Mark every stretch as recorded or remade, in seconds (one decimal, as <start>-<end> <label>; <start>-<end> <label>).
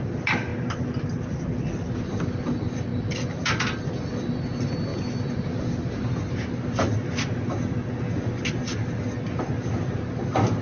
0.0-10.6 recorded